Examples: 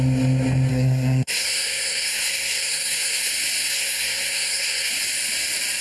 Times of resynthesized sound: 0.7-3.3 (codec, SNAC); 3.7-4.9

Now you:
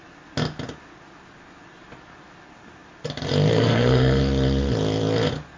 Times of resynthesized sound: 3.5-4.2 (codec, SNAC)

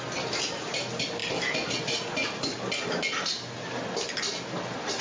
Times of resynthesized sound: none

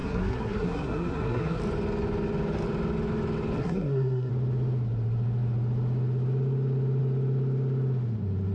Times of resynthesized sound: 0.0-1.6 (codec, SNAC); 3.6-4.3

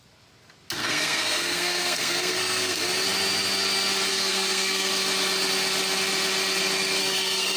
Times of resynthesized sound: 0.8-2.8 (codec, SNAC); 4.1-4.9; 7.0-7.6

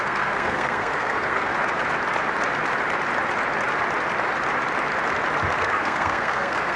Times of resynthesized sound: 0.0-1.5 (codec, SNAC); 5.6-6.8

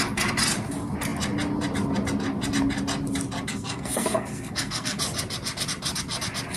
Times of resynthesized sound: 3.5-5.0 (codec, SNAC)

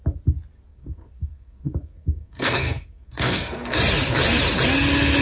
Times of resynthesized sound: 0.7-3.8 (codec, SNAC)